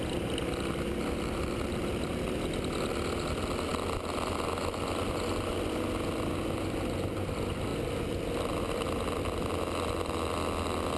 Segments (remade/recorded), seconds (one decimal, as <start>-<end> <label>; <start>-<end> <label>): 0.0-11.0 recorded